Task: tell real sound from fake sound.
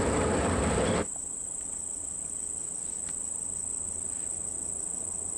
real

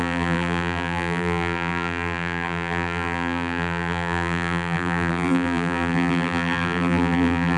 fake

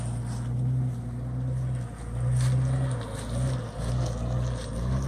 real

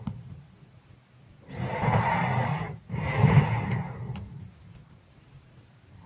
fake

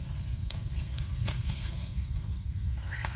fake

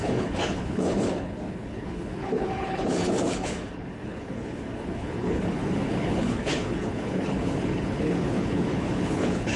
fake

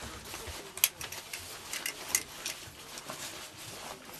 real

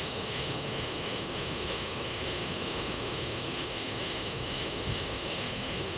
fake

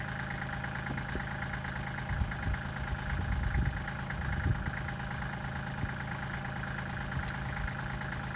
real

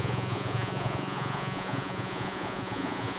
fake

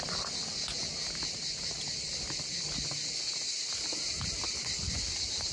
real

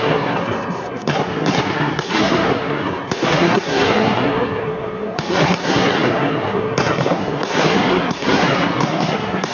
fake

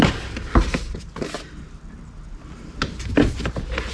real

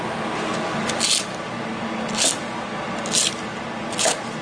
real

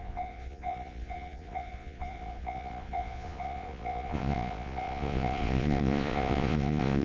fake